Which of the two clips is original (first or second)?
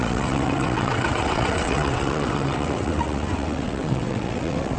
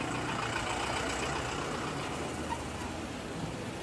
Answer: second